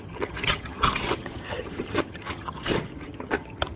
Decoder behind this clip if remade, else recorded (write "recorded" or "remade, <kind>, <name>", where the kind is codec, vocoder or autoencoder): remade, vocoder, HiFi-GAN